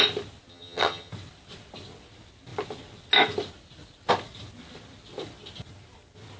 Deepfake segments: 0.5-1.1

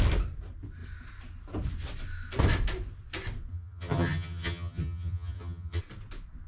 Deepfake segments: 3.5-5.8

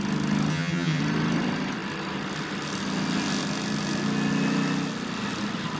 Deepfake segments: 0.5-1.0

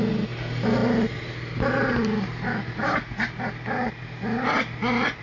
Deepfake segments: none

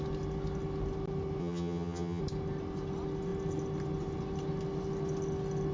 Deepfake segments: 1.4-2.2

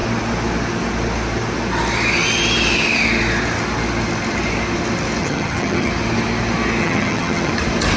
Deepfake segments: 5.2-5.9; 6.8-7.5

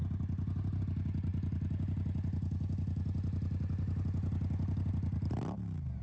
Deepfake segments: none

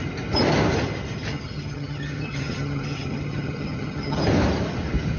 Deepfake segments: 1.3-4.2